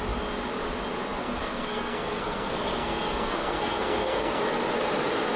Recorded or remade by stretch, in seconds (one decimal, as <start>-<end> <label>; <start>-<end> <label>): 0.0-1.2 recorded; 1.2-4.4 remade; 4.4-5.4 recorded